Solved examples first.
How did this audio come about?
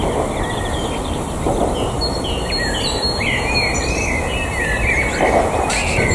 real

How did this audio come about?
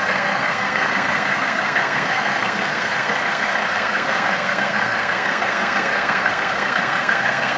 fake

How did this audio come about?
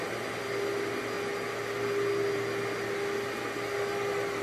real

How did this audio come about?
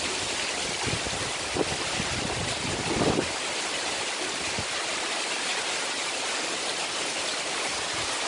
real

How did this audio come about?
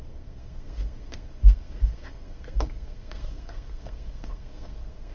fake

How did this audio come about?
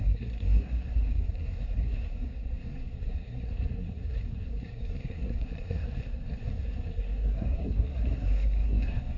fake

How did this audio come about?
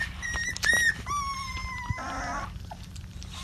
real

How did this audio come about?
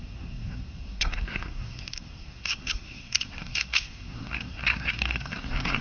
fake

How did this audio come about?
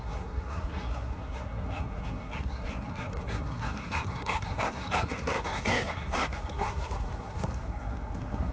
fake